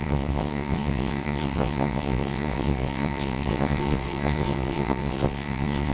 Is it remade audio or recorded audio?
remade